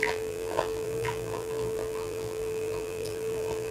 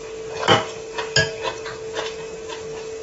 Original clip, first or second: second